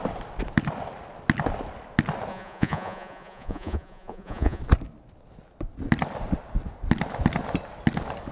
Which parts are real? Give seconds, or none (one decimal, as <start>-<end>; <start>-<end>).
0.0-2.3; 4.6-8.3

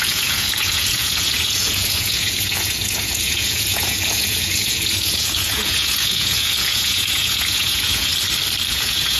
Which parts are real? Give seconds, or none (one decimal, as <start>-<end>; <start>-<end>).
8.1-8.7